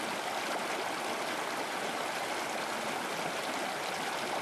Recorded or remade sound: recorded